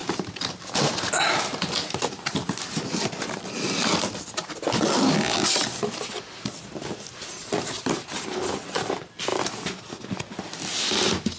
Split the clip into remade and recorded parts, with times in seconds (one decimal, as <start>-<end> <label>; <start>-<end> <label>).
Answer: 0.0-11.4 recorded

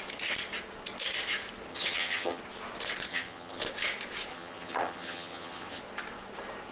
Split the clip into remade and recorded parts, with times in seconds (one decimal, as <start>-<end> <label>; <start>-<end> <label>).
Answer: 0.0-1.7 recorded; 1.7-2.4 remade; 2.4-3.1 recorded; 3.1-3.6 remade; 3.6-4.3 recorded; 4.3-5.8 remade; 5.8-6.7 recorded